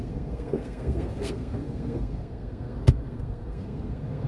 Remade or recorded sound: remade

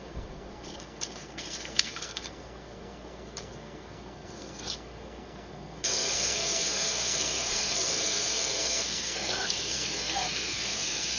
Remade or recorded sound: remade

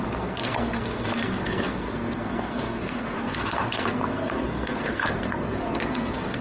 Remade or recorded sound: remade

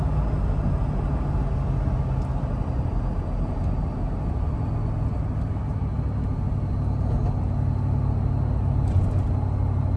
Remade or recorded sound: recorded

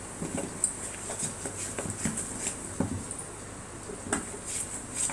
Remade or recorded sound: recorded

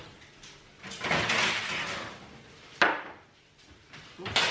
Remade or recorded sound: recorded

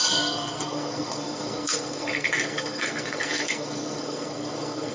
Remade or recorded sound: remade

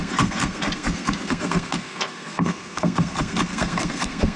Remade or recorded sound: remade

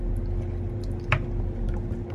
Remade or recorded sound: recorded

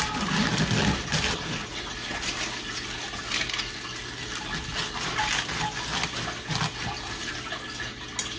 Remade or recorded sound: recorded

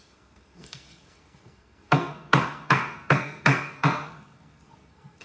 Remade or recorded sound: remade